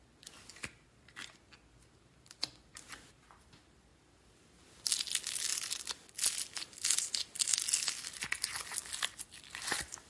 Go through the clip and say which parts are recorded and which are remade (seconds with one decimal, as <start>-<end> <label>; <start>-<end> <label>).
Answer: 0.0-8.8 recorded; 8.8-10.1 remade